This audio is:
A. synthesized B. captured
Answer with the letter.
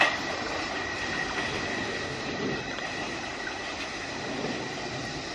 B